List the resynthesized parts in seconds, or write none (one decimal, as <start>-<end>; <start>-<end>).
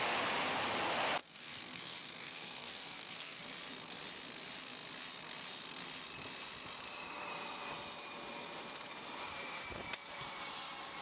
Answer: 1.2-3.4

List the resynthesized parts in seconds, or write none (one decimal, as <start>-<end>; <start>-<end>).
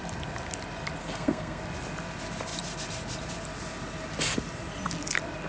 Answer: 1.0-1.6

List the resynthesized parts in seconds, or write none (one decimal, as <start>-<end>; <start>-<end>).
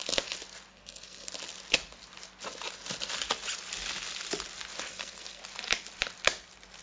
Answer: 0.7-1.3; 4.9-5.4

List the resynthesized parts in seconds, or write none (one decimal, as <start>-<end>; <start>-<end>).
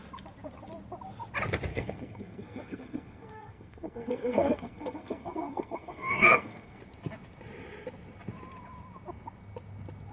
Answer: 1.7-6.8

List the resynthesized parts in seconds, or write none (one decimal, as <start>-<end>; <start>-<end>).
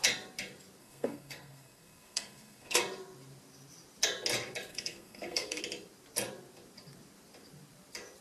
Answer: 0.8-2.8; 4.7-5.6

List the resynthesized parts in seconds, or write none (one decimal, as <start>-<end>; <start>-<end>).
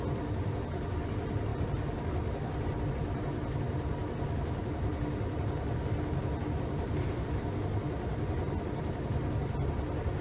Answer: none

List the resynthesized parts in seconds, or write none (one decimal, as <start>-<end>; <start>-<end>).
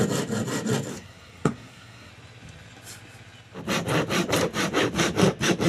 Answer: 0.9-2.1